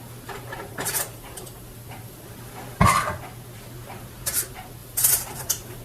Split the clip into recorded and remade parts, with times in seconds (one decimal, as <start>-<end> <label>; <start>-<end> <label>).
0.0-0.7 recorded; 0.7-2.2 remade; 2.2-4.8 recorded; 4.8-5.8 remade